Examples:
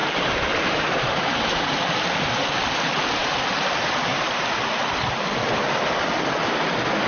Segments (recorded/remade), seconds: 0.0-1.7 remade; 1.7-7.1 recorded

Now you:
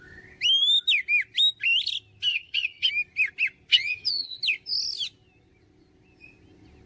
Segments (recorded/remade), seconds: 0.0-2.3 recorded; 2.3-2.9 remade; 2.9-3.7 recorded; 3.7-4.4 remade; 4.4-6.9 recorded

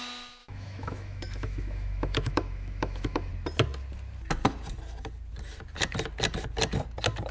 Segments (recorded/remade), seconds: 0.0-0.4 recorded; 0.4-3.3 remade; 3.3-7.3 recorded

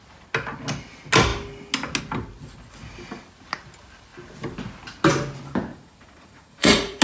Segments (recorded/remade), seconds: 0.0-5.7 recorded; 5.7-7.0 remade

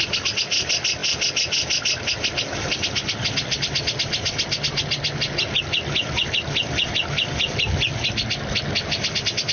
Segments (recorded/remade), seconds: 0.0-9.5 recorded